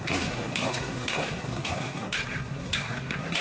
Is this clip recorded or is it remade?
remade